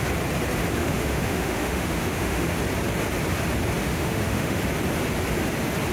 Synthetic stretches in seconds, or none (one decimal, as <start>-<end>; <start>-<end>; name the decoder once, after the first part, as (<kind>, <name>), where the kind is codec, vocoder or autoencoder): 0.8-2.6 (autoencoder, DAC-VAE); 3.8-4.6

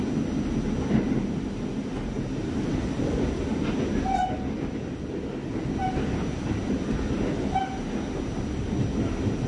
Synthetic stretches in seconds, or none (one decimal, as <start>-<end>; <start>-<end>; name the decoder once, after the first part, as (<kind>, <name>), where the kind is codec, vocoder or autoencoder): none

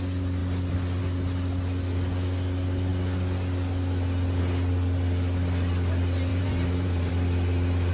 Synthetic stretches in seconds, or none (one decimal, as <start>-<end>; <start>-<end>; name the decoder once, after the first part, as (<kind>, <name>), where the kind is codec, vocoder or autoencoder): 6.3-7.1 (vocoder, BigVGAN v2)